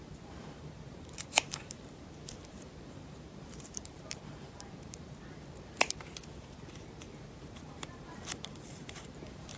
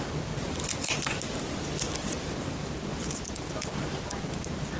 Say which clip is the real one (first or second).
second